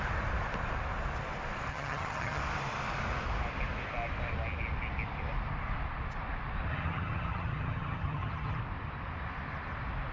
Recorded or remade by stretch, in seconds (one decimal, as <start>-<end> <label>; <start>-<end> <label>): 0.0-1.7 recorded; 1.7-2.4 remade; 2.4-6.7 recorded; 6.7-8.6 remade; 8.6-10.1 recorded